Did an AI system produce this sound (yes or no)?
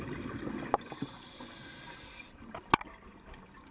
no